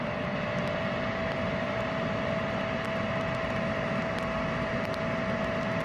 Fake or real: real